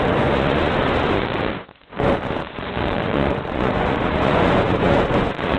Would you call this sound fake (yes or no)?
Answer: yes